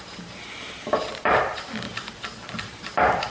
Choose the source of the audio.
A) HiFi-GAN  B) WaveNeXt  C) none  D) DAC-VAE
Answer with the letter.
C